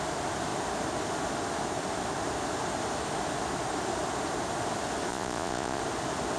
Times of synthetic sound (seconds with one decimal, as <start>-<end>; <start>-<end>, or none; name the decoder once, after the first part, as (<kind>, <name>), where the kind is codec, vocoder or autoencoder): 5.1-5.8 (vocoder, Vocos)